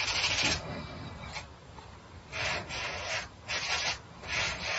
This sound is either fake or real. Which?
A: real